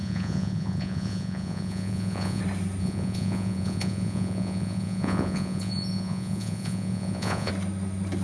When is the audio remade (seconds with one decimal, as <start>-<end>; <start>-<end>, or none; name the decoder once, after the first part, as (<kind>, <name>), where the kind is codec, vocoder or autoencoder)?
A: 0.0-2.4 (vocoder, Vocos); 2.8-7.5